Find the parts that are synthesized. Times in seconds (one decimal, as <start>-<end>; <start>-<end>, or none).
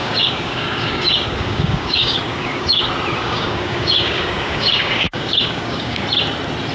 0.0-2.8; 3.2-6.0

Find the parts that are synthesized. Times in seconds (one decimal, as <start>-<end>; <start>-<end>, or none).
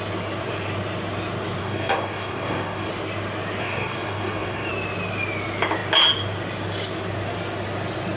1.6-2.9; 3.6-4.7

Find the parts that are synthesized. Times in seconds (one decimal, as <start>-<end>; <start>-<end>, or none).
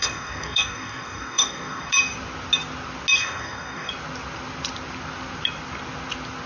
0.0-1.9; 3.2-3.9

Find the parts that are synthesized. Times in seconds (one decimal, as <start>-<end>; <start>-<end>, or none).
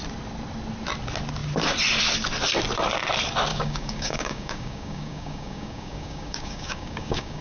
3.5-7.4